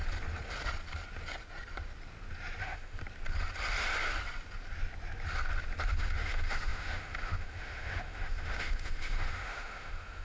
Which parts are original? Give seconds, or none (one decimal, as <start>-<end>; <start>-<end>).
0.0-2.6; 3.0-5.9